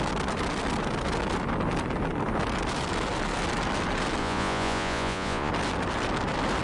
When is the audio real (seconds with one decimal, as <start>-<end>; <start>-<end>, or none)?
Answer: 0.0-4.2; 5.5-6.6